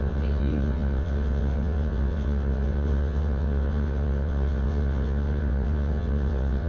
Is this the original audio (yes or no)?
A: no